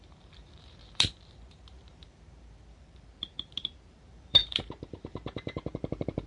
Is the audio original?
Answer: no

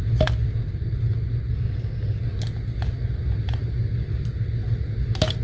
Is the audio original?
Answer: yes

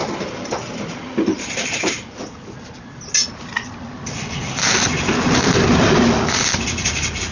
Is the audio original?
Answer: yes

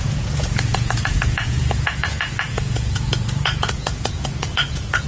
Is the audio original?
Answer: no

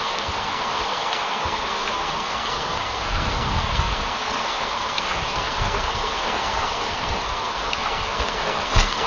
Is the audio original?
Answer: no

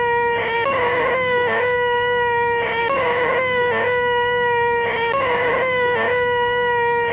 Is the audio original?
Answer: no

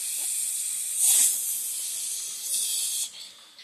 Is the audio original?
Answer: yes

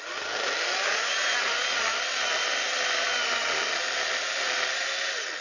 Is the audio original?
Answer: yes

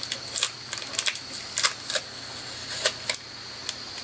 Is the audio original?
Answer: yes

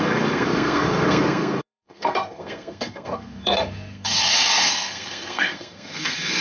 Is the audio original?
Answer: no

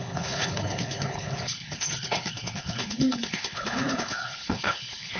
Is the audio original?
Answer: no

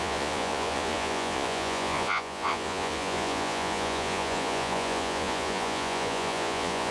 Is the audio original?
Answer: no